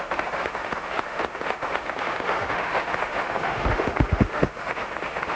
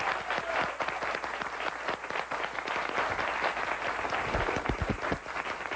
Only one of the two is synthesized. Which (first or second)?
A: first